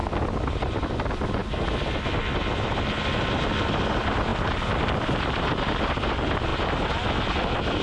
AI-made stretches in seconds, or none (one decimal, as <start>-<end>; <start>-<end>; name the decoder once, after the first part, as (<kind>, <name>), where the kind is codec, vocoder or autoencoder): none

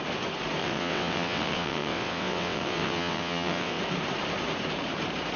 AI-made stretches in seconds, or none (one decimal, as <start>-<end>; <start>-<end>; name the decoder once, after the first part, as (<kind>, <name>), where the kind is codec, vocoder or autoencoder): 0.6-3.8 (vocoder, WaveNeXt)

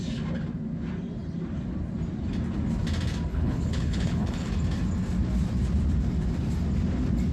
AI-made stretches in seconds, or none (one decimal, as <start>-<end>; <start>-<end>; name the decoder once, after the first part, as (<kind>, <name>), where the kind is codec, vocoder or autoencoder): 3.3-4.5 (codec, HILCodec)

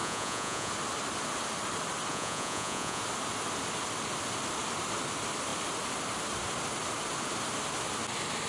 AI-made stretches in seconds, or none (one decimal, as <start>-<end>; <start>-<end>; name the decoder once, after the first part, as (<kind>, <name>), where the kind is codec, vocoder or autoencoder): 0.0-0.7 (vocoder, Vocos); 2.1-3.0

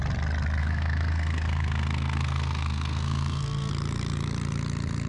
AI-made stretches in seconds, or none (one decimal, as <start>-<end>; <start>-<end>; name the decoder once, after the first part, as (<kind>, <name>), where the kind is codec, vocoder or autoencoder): 0.6-3.7 (codec, SNAC)